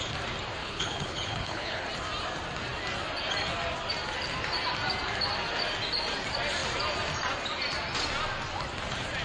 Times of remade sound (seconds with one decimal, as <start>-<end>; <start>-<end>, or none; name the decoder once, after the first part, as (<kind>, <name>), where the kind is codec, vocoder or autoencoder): 0.6-1.8 (codec, HILCodec)